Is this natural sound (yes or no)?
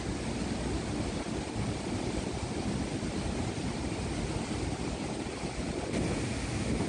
yes